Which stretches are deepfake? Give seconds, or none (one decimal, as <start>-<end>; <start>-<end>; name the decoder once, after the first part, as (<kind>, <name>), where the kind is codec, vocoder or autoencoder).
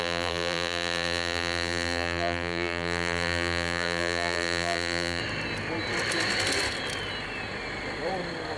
0.0-5.2 (vocoder, BigVGAN v2)